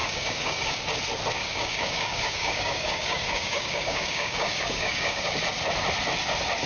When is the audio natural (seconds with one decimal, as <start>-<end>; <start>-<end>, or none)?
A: 0.7-1.4; 5.4-6.7

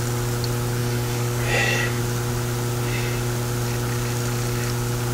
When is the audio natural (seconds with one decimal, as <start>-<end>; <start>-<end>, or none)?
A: 0.0-0.8; 2.0-5.1

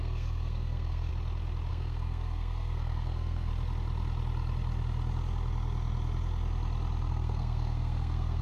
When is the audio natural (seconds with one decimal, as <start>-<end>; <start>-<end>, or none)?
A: 1.1-1.7; 3.5-7.1

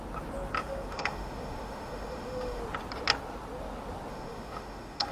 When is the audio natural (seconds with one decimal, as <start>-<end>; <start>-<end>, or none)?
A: 0.0-0.6; 2.6-4.1